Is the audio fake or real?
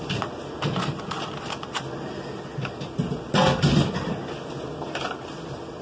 real